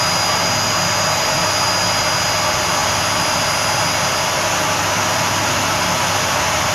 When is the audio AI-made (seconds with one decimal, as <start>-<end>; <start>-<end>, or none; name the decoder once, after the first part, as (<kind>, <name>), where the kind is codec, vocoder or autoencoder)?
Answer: none